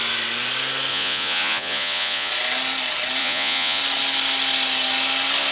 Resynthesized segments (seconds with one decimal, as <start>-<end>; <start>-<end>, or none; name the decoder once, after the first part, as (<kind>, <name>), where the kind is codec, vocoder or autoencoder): 0.9-2.3 (vocoder, Vocos); 3.2-3.8